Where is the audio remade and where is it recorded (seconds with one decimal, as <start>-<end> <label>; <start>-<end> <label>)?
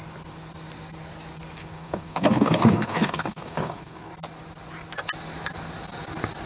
0.0-1.6 recorded; 1.6-4.1 remade; 4.1-6.5 recorded